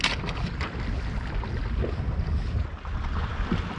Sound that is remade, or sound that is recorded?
recorded